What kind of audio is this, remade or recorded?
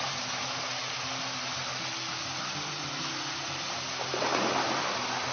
recorded